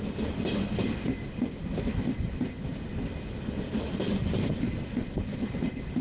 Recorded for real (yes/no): yes